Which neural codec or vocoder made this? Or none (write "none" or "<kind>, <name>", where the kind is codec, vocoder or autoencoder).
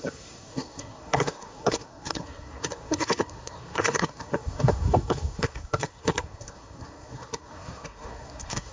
codec, SNAC